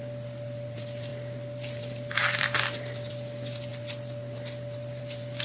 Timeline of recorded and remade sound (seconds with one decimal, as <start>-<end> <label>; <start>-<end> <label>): 0.0-5.4 recorded